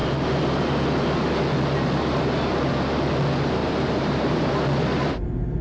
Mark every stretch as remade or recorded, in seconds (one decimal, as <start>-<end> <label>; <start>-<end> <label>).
0.0-3.6 recorded; 3.6-4.5 remade; 4.5-5.6 recorded